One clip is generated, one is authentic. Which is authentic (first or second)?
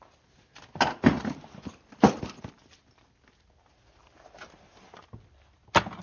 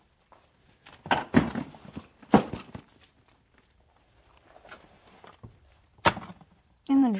first